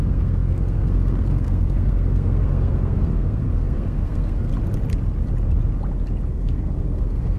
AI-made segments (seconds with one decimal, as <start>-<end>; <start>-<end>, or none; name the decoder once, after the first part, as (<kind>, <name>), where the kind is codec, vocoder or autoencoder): 0.0-4.5 (codec, SNAC); 6.3-7.4